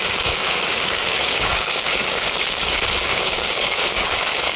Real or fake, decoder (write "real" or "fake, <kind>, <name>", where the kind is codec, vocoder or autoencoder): fake, codec, DAC